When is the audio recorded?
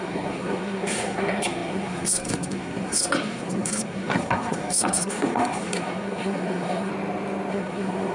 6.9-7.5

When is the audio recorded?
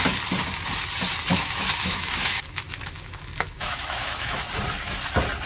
0.0-1.3; 4.5-5.5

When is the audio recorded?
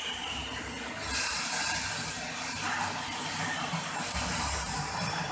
0.4-3.6